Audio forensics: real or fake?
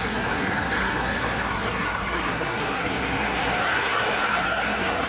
fake